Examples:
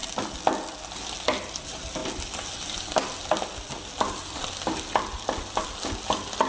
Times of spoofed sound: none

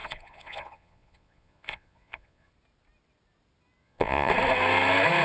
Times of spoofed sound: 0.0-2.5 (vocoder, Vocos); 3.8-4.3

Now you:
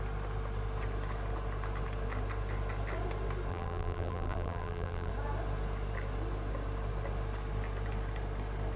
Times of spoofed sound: 3.5-5.1 (vocoder, BigVGAN v2)